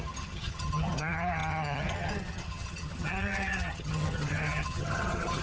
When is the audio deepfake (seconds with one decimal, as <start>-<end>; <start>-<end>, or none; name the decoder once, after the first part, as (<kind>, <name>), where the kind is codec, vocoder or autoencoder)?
0.0-5.4 (vocoder, HiFi-GAN)